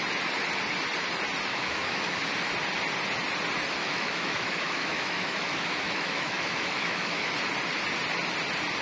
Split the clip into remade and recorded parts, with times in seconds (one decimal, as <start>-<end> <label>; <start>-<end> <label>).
0.0-1.5 recorded; 1.5-2.2 remade; 2.2-3.8 recorded; 3.8-7.3 remade; 7.3-8.8 recorded